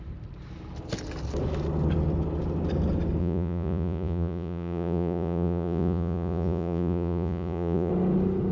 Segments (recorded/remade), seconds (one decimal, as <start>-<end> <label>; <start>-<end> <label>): 0.0-3.2 recorded; 3.2-7.9 remade; 7.9-8.5 recorded